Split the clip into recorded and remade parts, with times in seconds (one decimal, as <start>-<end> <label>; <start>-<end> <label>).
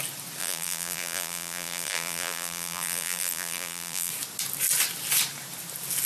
0.0-0.4 recorded; 0.4-4.1 remade; 4.1-6.1 recorded